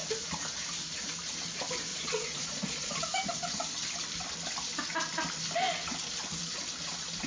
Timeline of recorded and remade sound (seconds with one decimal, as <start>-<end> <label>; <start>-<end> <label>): 0.0-1.9 recorded; 1.9-2.9 remade; 2.9-7.3 recorded